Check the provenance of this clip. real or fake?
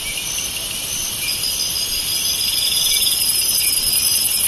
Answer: real